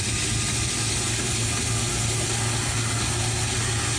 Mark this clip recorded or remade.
recorded